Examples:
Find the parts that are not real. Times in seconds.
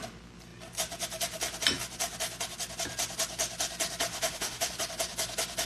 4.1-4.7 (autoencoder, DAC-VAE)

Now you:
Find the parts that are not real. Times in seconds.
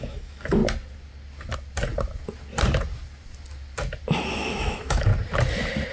0.0-0.6 (autoencoder, DAC-VAE); 4.1-5.1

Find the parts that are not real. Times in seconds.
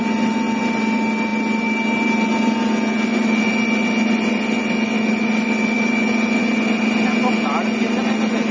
none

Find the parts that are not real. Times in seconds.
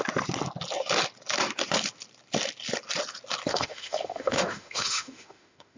3.5-5.8 (autoencoder, DAC-VAE)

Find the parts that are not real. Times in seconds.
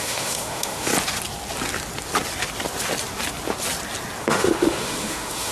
0.0-0.9 (autoencoder, DAC-VAE); 4.2-5.5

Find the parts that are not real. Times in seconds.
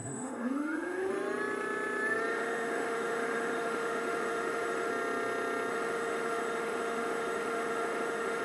0.0-1.1 (autoencoder, DAC-VAE); 2.3-4.9; 5.7-8.4